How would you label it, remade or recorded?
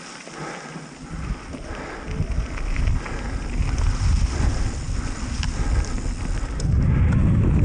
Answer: recorded